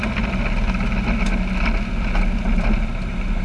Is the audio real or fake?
real